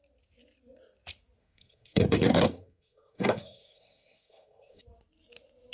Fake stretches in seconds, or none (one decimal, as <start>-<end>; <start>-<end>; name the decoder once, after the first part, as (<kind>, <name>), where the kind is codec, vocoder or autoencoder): 1.4-4.8 (codec, SNAC)